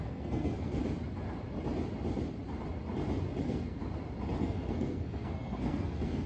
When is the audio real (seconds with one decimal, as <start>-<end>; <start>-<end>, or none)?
0.8-3.4; 3.8-4.4